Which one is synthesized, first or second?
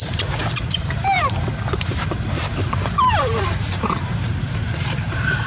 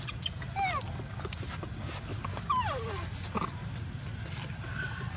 first